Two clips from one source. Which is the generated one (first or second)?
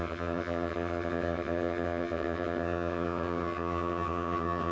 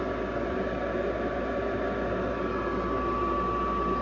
first